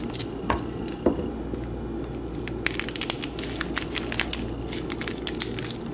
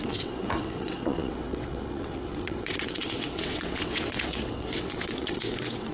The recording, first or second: first